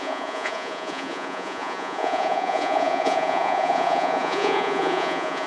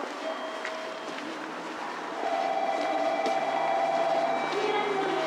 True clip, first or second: second